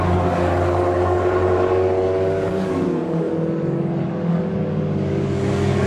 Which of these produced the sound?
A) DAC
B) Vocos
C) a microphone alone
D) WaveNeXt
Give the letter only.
A